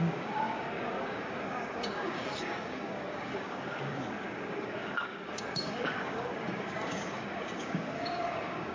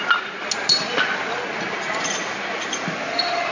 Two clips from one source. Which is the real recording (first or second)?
second